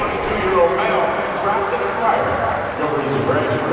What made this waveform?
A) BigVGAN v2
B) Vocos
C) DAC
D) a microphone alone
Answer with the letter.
D